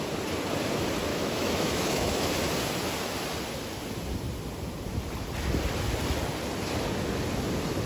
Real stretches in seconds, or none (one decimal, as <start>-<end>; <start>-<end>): 0.0-1.1; 2.3-7.9